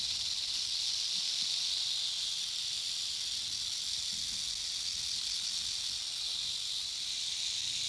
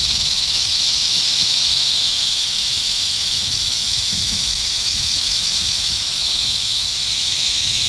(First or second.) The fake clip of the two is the second